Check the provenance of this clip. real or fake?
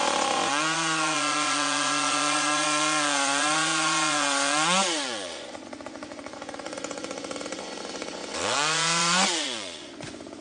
fake